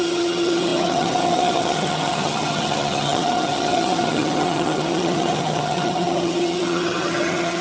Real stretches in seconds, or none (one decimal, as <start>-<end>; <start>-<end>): none